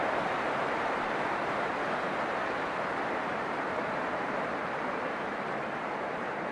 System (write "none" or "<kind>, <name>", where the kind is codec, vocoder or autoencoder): vocoder, BigVGAN v2